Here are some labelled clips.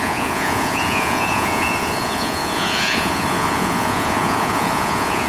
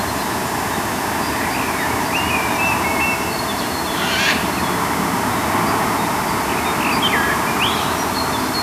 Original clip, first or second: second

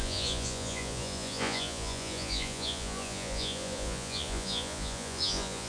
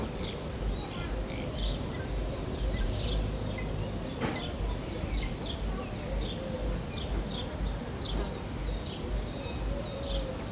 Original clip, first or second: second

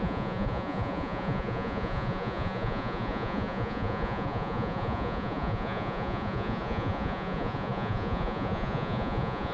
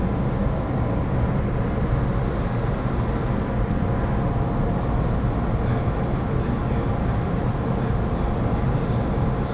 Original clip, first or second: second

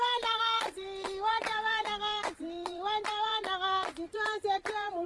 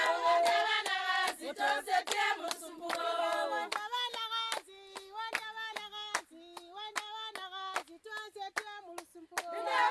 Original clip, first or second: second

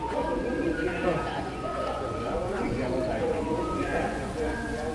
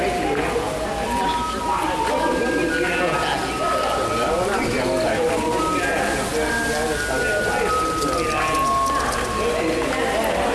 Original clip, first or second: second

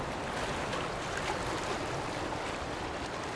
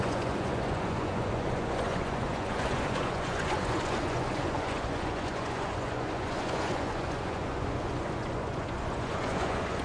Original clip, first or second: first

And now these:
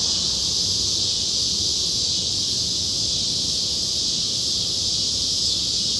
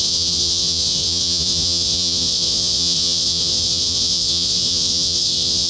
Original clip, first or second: first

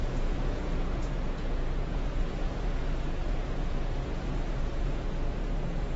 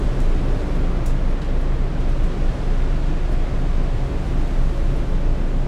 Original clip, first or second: second